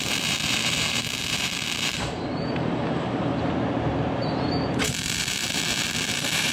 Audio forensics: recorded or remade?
remade